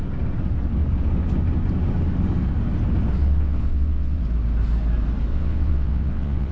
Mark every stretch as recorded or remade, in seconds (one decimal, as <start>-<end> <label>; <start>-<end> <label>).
0.0-3.2 recorded; 3.2-4.2 remade; 4.2-5.3 recorded; 5.3-6.5 remade